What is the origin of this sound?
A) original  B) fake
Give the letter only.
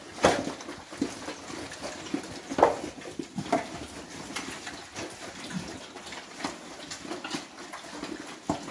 A